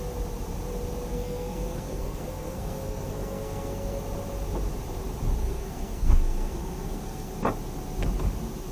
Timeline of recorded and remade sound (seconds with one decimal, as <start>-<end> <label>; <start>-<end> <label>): 0.0-1.1 recorded; 1.1-4.0 remade; 4.0-5.4 recorded; 5.4-7.3 remade; 7.3-8.7 recorded